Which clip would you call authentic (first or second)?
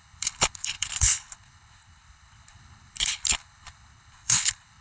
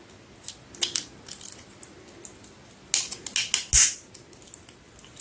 second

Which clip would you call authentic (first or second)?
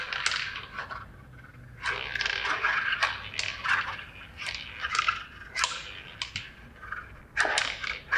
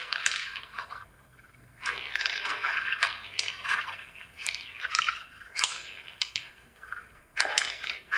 first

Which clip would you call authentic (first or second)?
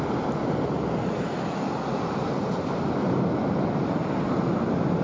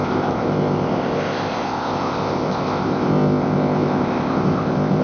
first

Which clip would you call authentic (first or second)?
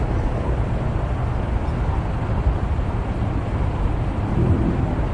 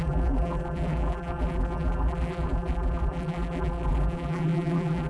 first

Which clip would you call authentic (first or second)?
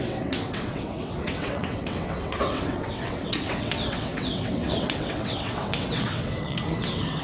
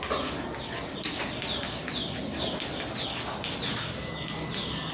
second